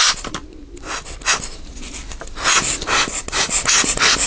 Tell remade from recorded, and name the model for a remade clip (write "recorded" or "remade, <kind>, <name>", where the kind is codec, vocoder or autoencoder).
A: recorded